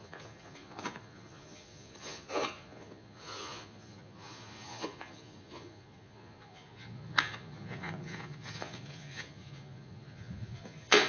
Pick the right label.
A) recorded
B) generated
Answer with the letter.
B